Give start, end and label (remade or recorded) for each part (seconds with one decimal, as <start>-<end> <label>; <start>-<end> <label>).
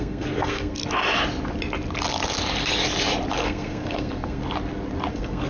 0.0-0.8 remade; 0.8-3.3 recorded; 3.3-4.4 remade; 4.4-5.1 recorded; 5.1-5.5 remade